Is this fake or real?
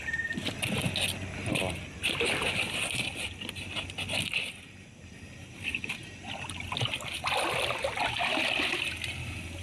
real